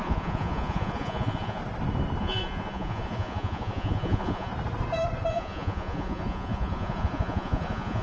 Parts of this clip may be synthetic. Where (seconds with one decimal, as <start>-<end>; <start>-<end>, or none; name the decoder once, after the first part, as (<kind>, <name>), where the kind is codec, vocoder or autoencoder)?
0.0-1.6 (vocoder, Vocos); 2.2-4.5; 5.3-8.0

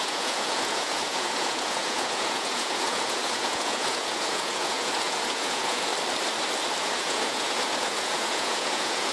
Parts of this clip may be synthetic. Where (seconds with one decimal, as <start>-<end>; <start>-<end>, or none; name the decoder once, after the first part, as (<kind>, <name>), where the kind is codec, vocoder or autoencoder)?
0.0-5.9 (vocoder, Vocos); 6.8-9.1